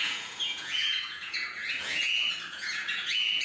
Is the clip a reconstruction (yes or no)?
yes